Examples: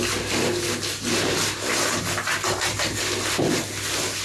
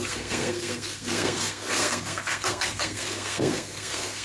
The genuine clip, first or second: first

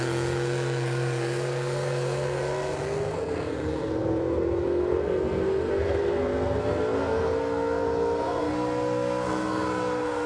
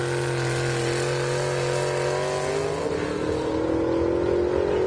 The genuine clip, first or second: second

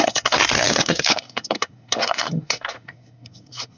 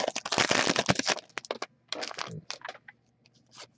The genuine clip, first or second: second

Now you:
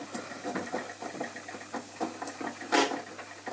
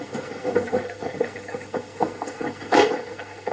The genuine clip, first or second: first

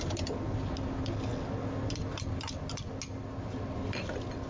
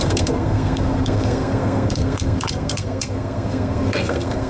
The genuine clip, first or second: first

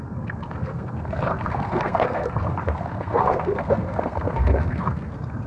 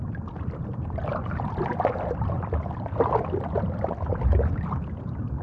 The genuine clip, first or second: second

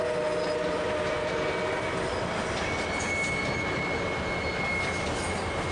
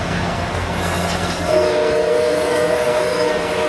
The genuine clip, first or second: first